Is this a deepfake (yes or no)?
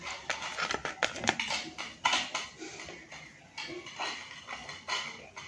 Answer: no